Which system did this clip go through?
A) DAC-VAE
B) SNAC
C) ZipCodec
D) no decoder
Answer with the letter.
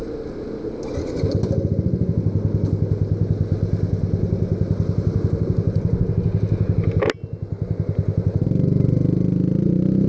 D